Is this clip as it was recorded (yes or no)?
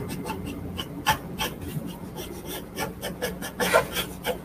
yes